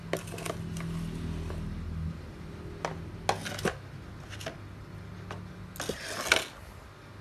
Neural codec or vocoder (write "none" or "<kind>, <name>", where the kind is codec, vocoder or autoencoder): none